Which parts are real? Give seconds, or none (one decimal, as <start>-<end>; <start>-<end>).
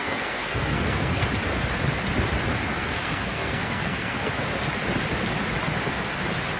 1.3-2.5; 4.3-6.6